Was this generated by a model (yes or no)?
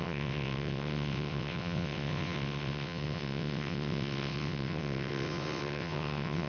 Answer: yes